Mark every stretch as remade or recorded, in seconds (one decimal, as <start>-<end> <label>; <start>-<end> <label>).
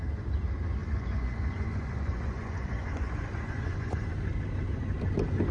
0.0-0.8 recorded; 0.8-4.1 remade; 4.1-5.5 recorded